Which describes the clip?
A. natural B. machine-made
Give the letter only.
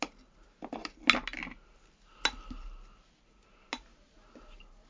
A